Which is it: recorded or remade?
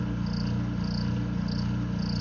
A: recorded